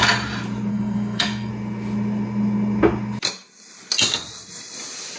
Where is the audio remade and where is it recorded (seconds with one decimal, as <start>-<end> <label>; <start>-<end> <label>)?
0.0-0.7 recorded; 0.7-1.5 remade; 1.5-5.2 recorded